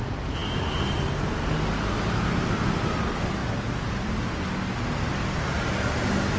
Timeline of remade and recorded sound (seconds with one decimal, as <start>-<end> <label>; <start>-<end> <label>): 0.0-6.4 recorded